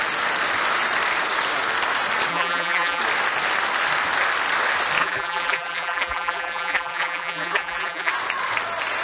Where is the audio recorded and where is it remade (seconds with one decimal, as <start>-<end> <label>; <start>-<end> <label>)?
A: 0.0-2.3 recorded; 2.3-3.0 remade; 3.0-5.0 recorded; 5.0-8.1 remade; 8.1-9.0 recorded